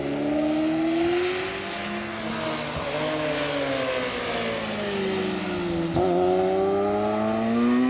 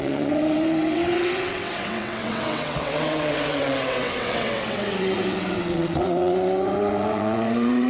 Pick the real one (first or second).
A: first